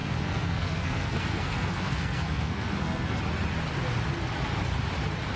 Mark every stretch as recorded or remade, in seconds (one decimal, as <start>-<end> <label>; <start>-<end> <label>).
0.0-3.2 remade; 3.2-5.4 recorded